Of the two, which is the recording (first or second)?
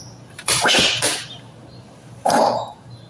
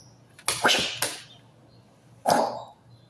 second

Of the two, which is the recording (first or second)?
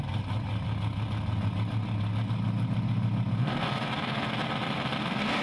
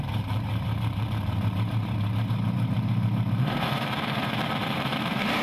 first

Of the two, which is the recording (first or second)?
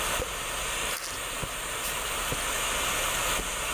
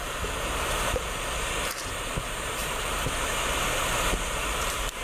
first